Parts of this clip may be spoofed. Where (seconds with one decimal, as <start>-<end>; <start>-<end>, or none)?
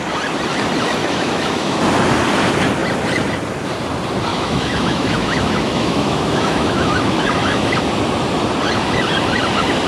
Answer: 1.0-1.8; 4.3-7.8